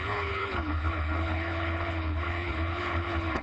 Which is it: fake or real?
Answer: fake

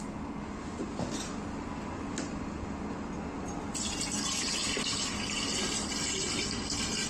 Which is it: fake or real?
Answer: real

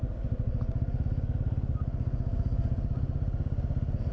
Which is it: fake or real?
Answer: real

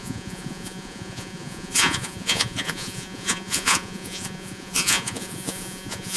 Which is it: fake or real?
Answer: fake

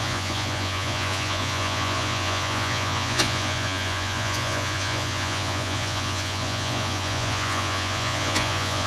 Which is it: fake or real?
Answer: fake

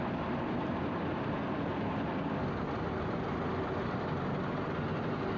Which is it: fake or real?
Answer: real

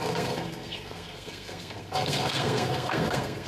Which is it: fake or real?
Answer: fake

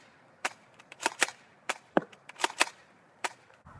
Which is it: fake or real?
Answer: fake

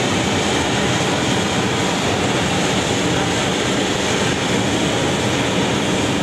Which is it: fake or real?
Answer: real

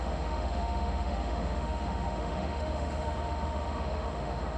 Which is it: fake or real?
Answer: fake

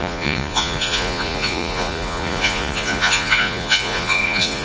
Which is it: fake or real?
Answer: fake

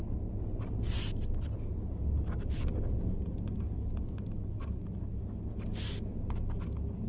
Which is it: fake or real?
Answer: real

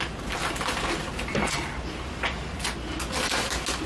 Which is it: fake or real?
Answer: real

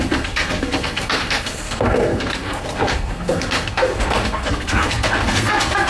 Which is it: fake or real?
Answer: fake